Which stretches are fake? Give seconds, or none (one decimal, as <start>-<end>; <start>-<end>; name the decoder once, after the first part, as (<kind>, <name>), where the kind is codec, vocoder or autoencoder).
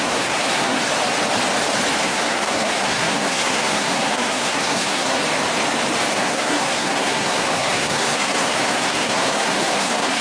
0.0-0.8 (codec, SNAC); 2.0-5.2; 6.1-10.2